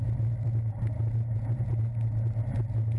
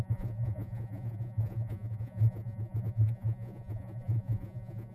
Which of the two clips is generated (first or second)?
second